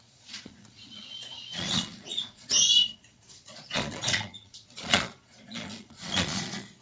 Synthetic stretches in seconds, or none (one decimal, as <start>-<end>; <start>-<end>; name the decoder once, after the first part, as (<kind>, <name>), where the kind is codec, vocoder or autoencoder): 0.0-6.8 (vocoder, Vocos)